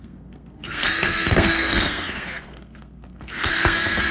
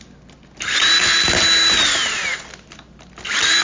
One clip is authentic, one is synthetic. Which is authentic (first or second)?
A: second